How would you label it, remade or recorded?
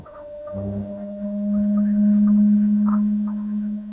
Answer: remade